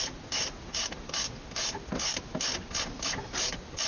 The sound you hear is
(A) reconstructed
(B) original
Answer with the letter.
B